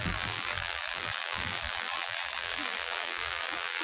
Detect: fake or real fake